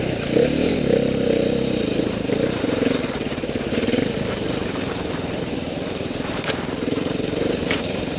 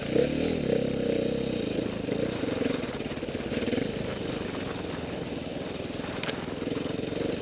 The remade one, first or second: first